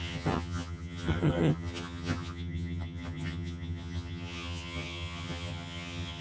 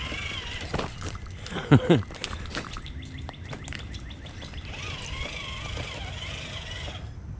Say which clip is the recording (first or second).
second